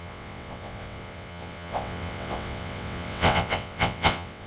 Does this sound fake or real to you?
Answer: fake